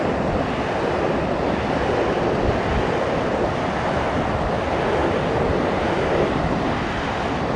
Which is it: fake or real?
real